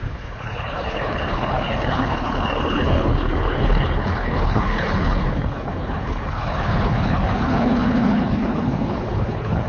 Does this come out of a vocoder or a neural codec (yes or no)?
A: yes